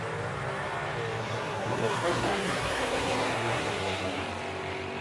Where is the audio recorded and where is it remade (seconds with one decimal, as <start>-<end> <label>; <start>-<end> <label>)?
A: 0.0-1.2 recorded; 1.2-4.2 remade; 4.2-5.0 recorded